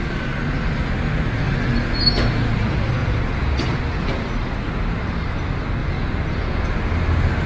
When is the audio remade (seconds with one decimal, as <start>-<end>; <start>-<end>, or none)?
3.0-3.8; 5.8-6.9

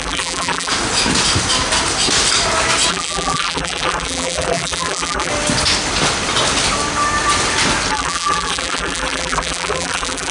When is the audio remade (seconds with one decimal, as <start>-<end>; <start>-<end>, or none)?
0.0-0.7; 2.9-5.3; 7.9-10.3

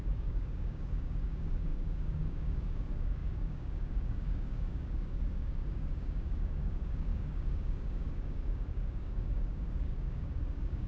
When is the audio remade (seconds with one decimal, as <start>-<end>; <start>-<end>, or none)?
0.0-10.9

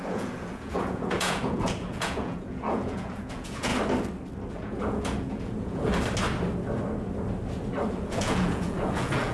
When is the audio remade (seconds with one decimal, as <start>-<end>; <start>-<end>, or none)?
0.0-3.7; 4.5-5.9; 7.9-9.3

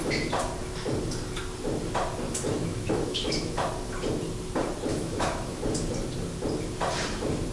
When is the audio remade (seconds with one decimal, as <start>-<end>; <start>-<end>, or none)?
2.6-3.7; 4.9-5.6

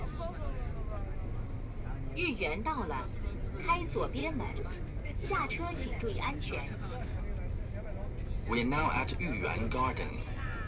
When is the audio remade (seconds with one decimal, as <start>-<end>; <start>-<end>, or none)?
4.2-7.2